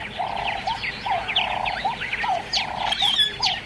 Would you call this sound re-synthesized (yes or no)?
yes